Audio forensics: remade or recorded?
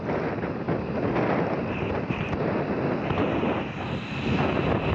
recorded